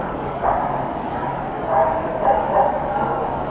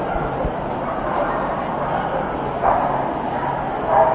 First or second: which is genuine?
second